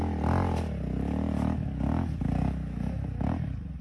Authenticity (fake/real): real